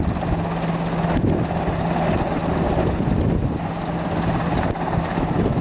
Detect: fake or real real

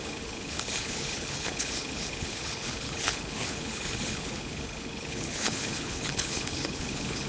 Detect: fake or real fake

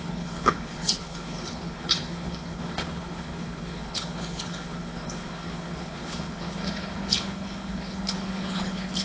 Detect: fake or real fake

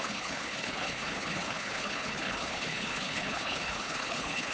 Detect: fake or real fake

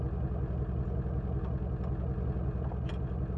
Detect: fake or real real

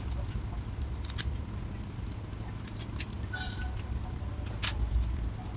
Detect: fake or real real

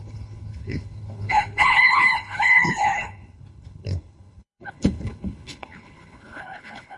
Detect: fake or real fake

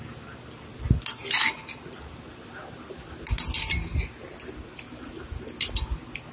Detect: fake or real real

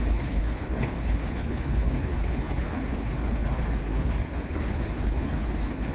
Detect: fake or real fake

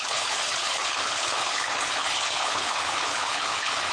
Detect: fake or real fake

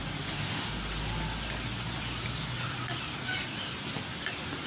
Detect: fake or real real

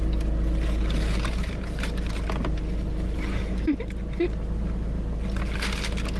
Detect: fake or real real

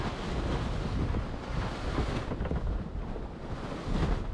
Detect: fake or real real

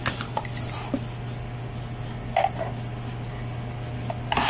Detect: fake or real real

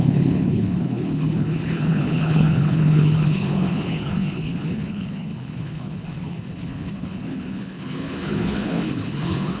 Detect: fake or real fake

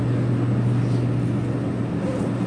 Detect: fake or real real